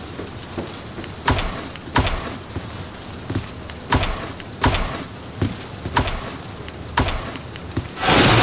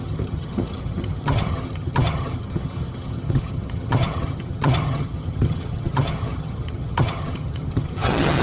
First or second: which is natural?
first